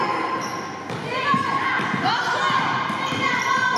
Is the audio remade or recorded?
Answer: recorded